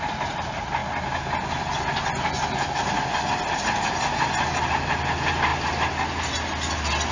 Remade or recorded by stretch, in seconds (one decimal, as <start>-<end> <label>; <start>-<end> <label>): 0.0-7.1 recorded